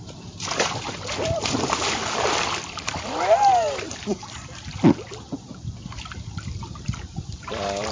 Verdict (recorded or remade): remade